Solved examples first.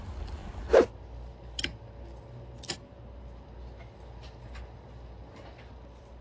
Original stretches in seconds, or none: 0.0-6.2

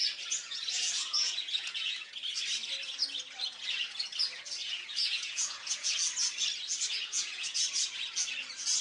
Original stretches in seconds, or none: 0.0-0.4; 2.2-4.6; 5.9-6.9; 7.6-8.8

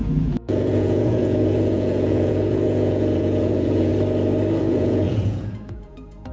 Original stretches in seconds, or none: 3.9-4.6

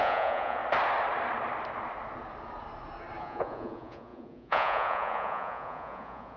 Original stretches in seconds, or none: 0.6-3.2

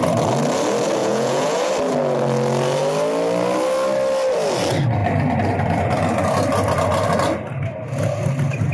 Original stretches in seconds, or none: 0.0-1.0; 1.7-8.7

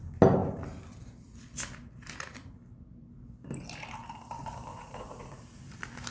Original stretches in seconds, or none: 0.0-4.7; 5.4-6.1

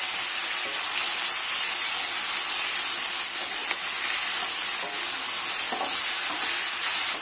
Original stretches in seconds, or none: 0.0-7.2

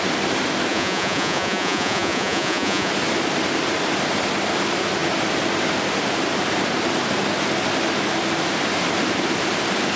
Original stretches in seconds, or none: 0.0-0.7; 2.9-10.0